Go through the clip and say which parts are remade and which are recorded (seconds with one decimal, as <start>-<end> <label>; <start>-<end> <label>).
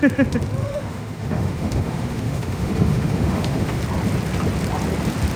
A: 0.0-0.6 recorded; 0.6-3.8 remade; 3.8-5.4 recorded